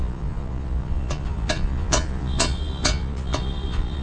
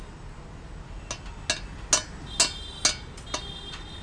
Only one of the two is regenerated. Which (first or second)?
first